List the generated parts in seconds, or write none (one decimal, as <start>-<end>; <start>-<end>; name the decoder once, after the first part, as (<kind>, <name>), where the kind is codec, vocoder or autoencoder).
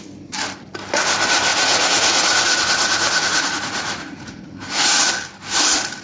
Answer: 1.5-5.1 (vocoder, Vocos)